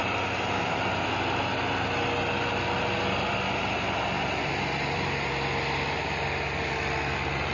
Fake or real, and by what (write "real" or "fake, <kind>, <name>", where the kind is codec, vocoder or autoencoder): real